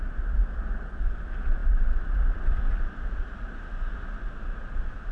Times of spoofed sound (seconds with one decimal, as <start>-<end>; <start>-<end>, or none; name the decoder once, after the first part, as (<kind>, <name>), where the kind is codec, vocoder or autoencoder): none